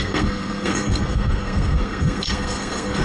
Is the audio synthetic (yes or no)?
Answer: yes